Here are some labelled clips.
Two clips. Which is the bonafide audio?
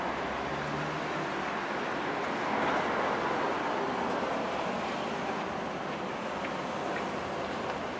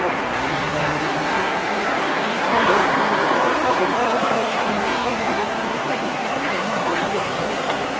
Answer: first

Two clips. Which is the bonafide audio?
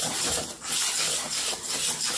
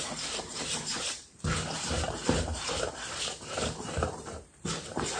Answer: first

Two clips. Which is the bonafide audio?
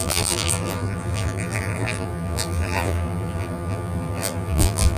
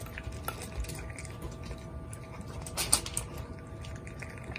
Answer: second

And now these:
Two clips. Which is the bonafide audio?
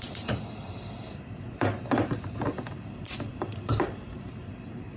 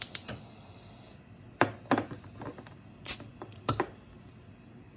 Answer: second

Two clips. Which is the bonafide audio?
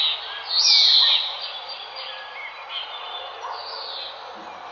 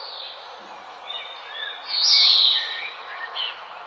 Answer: first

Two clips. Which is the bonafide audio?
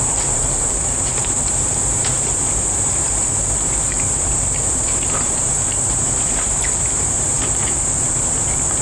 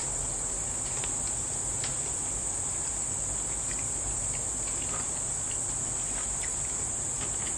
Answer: second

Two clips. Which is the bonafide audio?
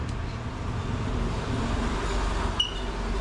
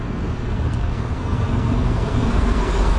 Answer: first